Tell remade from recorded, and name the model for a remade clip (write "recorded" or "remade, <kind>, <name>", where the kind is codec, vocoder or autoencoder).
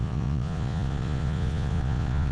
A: remade, vocoder, Vocos